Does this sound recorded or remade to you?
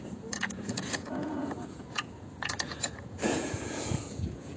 remade